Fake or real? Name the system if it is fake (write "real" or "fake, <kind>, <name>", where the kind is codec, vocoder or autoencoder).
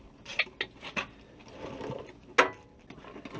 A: real